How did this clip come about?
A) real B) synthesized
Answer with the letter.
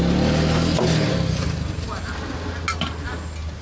A